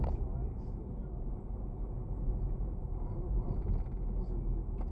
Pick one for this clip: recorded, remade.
recorded